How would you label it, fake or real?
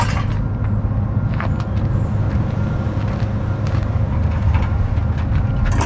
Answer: real